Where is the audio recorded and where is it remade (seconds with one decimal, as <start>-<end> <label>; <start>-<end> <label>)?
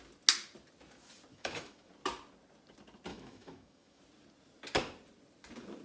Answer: 0.0-1.3 recorded; 1.3-1.9 remade; 1.9-3.1 recorded; 3.1-4.0 remade; 4.0-5.8 recorded